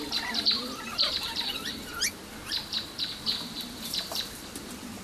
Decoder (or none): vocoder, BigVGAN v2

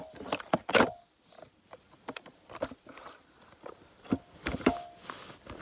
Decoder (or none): vocoder, BigVGAN v2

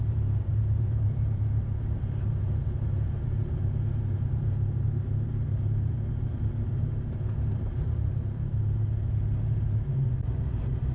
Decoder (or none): vocoder, BigVGAN v2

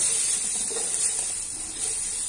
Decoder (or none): vocoder, BigVGAN v2